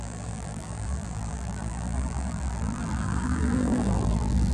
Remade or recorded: remade